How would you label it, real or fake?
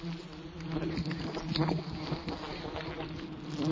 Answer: real